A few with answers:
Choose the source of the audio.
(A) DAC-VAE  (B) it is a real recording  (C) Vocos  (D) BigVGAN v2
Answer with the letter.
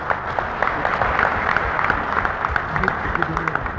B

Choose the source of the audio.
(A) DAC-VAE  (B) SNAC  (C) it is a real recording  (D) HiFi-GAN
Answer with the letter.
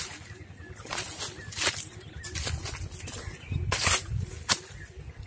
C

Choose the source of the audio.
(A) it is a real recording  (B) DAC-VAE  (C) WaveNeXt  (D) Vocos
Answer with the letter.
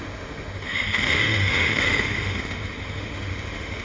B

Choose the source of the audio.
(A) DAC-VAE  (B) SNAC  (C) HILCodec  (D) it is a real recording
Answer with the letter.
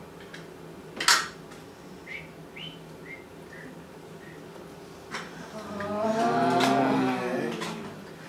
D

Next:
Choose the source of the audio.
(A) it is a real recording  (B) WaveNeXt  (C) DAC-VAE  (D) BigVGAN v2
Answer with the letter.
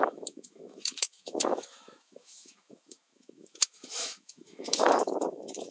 C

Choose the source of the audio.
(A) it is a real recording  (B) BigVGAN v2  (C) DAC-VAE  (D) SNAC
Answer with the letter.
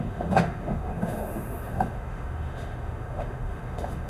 C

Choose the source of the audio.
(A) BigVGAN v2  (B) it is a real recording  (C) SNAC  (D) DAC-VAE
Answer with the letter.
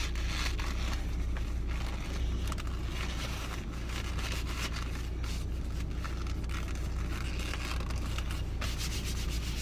B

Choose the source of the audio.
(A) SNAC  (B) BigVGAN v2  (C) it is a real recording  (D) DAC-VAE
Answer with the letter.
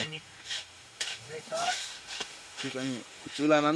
D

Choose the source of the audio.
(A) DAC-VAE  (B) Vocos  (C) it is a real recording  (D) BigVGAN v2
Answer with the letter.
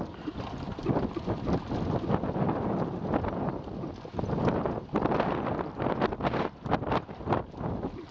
C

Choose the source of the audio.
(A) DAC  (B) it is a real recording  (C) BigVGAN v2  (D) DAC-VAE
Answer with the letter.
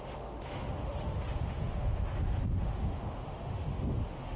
D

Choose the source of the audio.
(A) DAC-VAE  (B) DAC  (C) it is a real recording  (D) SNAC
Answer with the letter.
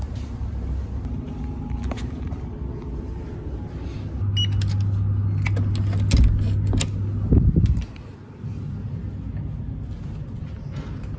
C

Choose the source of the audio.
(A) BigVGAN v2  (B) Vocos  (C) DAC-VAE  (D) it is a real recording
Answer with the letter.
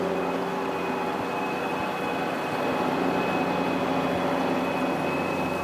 D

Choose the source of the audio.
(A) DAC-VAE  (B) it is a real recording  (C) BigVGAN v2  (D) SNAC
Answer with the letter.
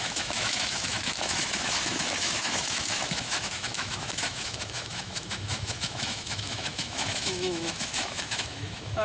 A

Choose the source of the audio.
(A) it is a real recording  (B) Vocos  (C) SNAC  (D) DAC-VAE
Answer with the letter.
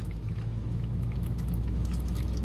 D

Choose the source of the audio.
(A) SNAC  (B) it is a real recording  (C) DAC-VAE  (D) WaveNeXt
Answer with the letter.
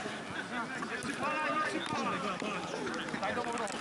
B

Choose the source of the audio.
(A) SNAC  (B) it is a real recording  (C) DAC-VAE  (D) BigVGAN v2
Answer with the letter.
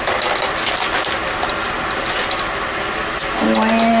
B